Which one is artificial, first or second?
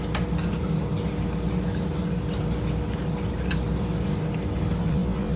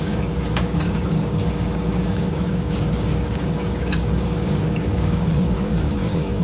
second